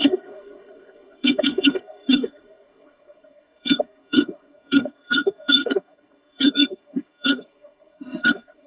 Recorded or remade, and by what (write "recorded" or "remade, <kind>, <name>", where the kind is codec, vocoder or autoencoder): remade, codec, SNAC